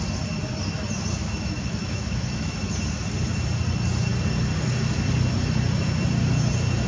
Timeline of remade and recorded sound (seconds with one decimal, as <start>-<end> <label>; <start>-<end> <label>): 0.0-1.2 recorded; 1.2-2.7 remade; 2.7-6.9 recorded